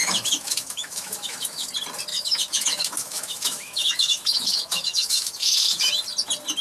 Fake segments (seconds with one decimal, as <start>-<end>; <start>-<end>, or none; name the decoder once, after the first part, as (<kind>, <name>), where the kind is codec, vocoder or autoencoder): 0.0-1.7 (autoencoder, DAC-VAE); 2.1-5.9